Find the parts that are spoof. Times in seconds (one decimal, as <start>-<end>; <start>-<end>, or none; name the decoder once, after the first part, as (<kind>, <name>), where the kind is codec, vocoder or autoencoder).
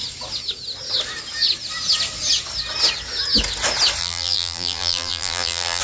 4.0-5.8 (vocoder, BigVGAN v2)